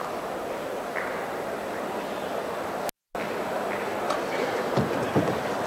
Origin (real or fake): real